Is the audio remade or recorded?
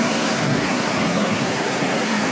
remade